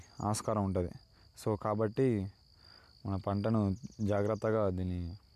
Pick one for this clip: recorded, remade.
recorded